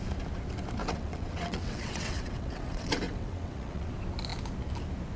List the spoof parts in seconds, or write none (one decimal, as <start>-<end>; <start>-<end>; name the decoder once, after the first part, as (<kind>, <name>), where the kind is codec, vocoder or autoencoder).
0.8-3.9 (vocoder, WaveNeXt)